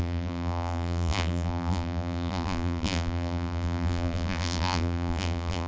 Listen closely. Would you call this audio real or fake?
fake